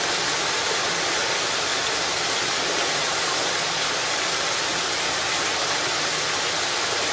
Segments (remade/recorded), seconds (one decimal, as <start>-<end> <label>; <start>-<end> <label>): 0.0-7.1 recorded